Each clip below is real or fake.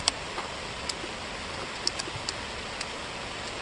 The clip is real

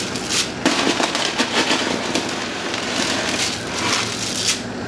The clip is real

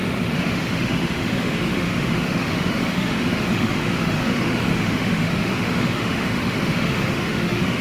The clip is fake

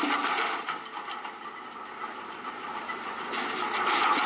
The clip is real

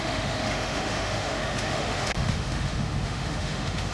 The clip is fake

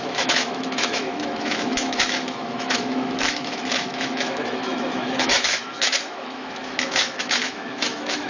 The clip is fake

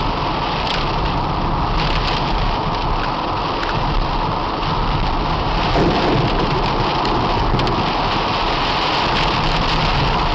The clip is real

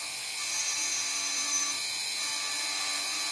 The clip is real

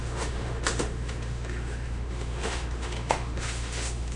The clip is fake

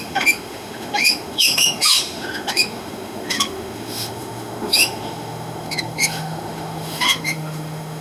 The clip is fake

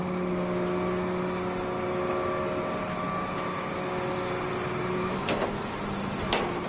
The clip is real